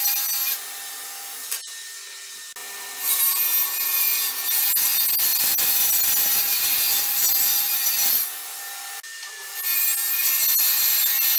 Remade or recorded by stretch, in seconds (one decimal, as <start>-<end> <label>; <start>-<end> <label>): 0.0-11.4 recorded